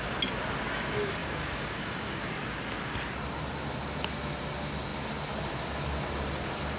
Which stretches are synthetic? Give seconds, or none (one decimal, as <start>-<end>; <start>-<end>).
1.2-2.3